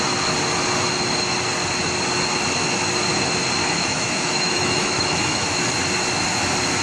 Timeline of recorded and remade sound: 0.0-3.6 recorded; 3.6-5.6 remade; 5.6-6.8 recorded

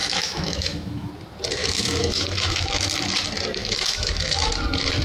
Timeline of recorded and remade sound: 0.0-1.1 remade; 1.1-1.6 recorded; 1.6-2.9 remade; 2.9-3.6 recorded; 3.6-4.5 remade; 4.5-5.0 recorded

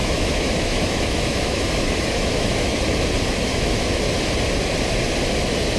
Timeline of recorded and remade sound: 0.0-2.9 remade; 2.9-3.5 recorded; 3.5-4.0 remade; 4.0-5.8 recorded